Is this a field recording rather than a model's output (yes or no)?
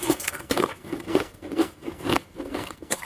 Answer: no